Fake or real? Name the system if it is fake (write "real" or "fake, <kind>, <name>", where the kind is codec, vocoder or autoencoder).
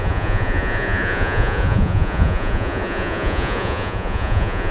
fake, vocoder, Vocos